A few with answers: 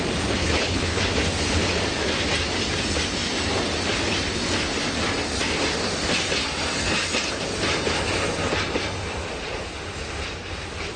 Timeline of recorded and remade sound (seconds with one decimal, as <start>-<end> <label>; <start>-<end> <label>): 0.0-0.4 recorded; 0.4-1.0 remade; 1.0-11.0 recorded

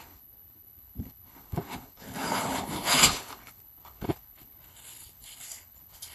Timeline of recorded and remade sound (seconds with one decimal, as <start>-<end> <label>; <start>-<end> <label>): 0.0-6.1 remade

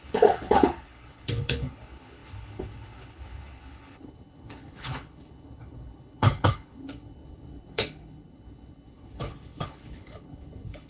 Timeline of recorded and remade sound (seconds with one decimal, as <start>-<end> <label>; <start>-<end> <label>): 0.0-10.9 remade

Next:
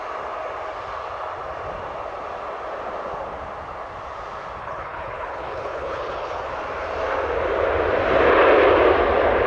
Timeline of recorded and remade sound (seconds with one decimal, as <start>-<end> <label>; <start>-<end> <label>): 0.0-4.6 recorded; 4.6-6.5 remade; 6.5-9.5 recorded